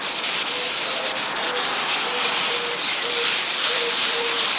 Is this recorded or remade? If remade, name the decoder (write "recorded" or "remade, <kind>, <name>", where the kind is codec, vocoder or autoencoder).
recorded